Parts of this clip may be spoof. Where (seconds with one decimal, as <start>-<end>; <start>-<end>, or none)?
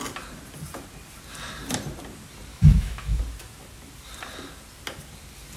2.5-3.2